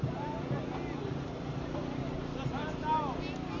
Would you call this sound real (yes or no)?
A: yes